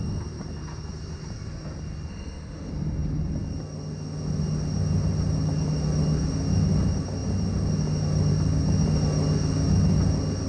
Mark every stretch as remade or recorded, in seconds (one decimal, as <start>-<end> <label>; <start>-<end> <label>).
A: 0.0-2.1 recorded; 2.1-2.7 remade; 2.7-10.5 recorded